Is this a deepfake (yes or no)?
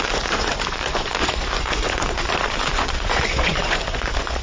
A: yes